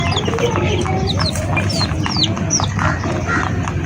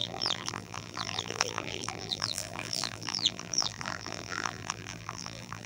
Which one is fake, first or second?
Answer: second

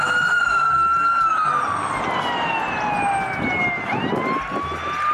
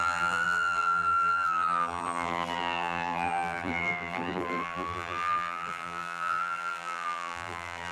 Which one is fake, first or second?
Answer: second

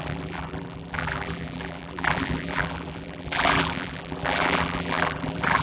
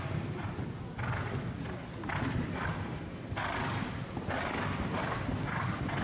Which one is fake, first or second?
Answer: first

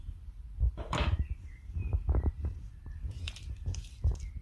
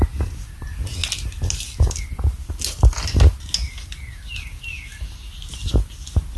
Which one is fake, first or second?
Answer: first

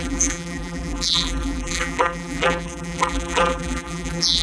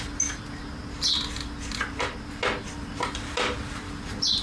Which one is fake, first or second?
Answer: first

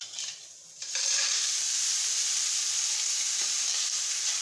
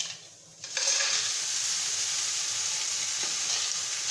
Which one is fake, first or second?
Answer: first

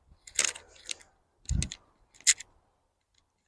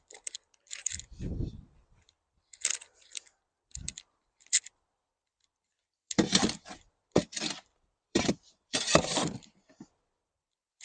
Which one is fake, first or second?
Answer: second